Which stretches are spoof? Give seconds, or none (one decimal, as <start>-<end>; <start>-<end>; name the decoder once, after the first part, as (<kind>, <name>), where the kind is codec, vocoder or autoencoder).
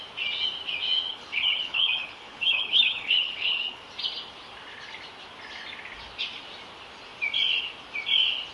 1.1-3.8 (codec, HILCodec)